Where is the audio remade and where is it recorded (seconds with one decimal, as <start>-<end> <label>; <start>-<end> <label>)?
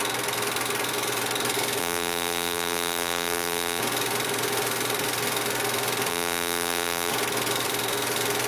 0.0-1.8 recorded; 1.8-3.8 remade; 3.8-6.1 recorded; 6.1-7.1 remade; 7.1-8.5 recorded